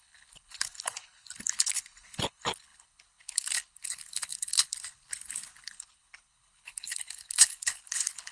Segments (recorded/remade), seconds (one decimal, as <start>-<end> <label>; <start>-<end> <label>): 0.0-8.3 remade